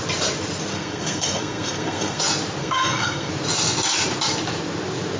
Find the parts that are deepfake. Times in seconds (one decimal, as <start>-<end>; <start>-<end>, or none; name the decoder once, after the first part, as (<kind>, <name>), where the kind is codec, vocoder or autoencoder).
0.7-2.2 (codec, SNAC); 2.6-3.3